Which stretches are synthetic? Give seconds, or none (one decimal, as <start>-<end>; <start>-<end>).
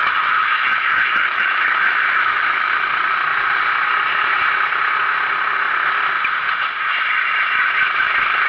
0.0-2.7